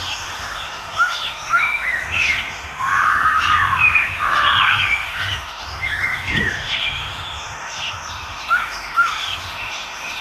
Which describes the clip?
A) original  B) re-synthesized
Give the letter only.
B